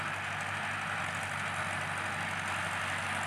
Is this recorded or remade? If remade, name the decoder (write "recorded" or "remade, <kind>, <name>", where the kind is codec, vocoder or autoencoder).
recorded